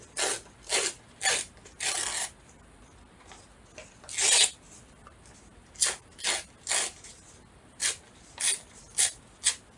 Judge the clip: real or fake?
real